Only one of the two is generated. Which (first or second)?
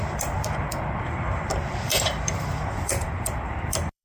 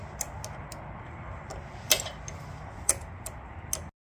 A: first